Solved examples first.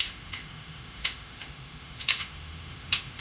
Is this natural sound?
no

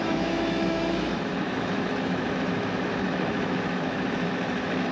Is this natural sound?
no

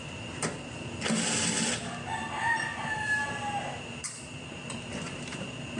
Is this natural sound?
yes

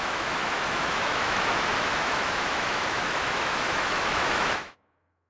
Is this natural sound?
no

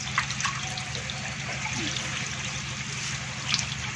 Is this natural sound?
yes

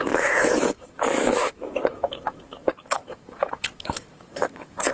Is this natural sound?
no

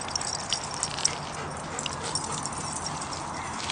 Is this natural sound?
yes